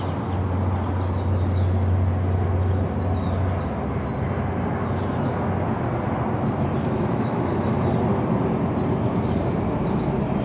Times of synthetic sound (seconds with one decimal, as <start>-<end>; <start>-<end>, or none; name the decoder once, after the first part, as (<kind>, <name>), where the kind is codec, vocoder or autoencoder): 6.8-7.5 (autoencoder, DAC-VAE)